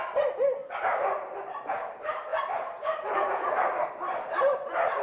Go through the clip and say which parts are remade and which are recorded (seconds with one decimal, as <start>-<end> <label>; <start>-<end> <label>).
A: 0.0-5.0 remade